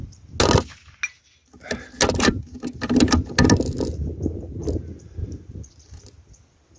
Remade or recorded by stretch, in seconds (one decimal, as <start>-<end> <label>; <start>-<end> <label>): 0.0-6.8 recorded